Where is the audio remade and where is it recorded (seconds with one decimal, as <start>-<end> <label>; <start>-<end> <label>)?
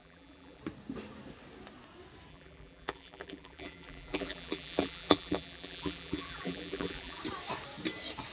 0.0-0.6 remade; 0.6-2.3 recorded; 2.3-7.2 remade; 7.2-8.3 recorded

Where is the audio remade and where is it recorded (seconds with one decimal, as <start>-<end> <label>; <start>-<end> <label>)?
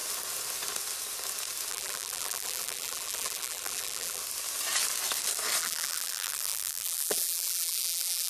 0.0-1.7 recorded; 1.7-4.2 remade; 4.2-5.6 recorded; 5.6-8.3 remade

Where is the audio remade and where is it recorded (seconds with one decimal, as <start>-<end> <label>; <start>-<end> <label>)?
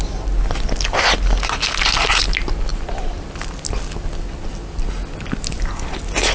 0.0-2.7 recorded; 2.7-3.5 remade; 3.5-6.3 recorded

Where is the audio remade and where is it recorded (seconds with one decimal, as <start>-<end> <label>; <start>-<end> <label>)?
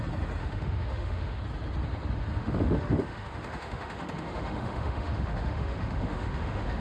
0.0-0.4 recorded; 0.4-1.4 remade; 1.4-2.4 recorded; 2.4-6.8 remade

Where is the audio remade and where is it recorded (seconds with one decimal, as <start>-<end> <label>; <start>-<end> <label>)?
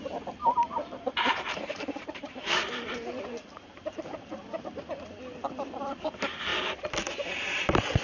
0.0-4.3 remade; 4.3-5.8 recorded; 5.8-6.5 remade; 6.5-7.1 recorded; 7.1-8.0 remade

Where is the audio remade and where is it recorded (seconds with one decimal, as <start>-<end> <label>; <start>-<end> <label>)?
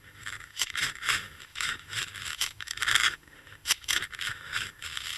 0.0-5.2 remade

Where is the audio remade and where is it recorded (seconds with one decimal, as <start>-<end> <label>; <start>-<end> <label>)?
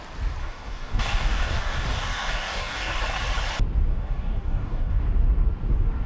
0.0-0.4 recorded; 0.4-3.0 remade; 3.0-3.9 recorded; 3.9-5.0 remade; 5.0-6.1 recorded